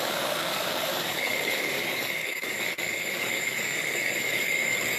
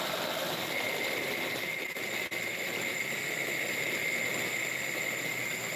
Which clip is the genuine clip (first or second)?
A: second